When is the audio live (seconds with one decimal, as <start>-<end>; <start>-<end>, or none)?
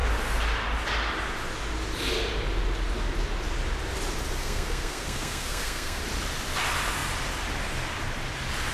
0.0-4.4; 6.0-8.7